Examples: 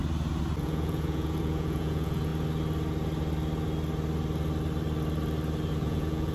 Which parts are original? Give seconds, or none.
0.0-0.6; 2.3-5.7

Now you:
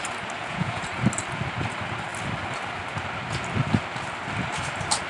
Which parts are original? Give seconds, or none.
0.0-0.4; 0.9-5.1

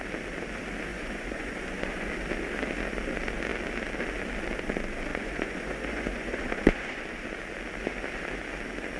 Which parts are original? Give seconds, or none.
0.0-0.9; 2.1-5.1; 7.0-9.0

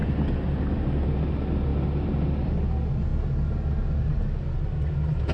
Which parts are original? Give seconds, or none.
0.0-5.3

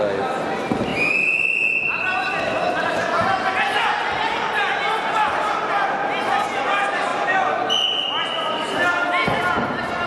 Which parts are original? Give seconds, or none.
0.0-10.1

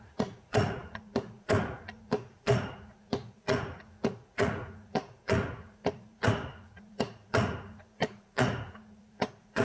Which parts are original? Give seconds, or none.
none

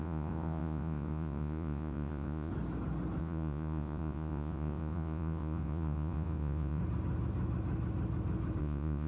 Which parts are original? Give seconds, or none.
2.5-3.2; 6.8-8.6